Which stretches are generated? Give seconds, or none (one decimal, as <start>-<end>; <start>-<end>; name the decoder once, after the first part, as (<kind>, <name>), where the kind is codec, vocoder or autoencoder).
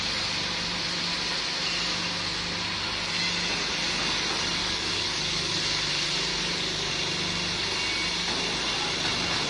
4.6-5.6 (codec, DAC); 6.3-6.9